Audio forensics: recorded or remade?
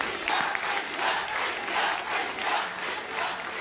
recorded